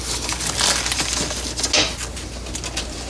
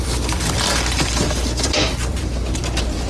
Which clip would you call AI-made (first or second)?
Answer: second